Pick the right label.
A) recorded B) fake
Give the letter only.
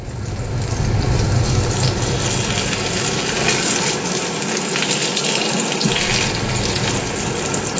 A